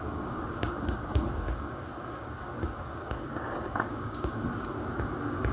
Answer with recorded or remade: remade